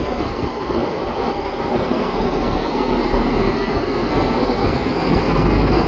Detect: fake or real fake